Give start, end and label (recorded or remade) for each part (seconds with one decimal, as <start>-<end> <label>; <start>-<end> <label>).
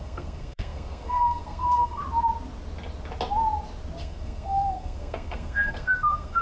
0.0-2.0 remade; 2.0-4.0 recorded; 4.0-6.4 remade